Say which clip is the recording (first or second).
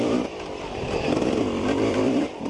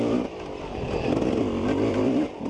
second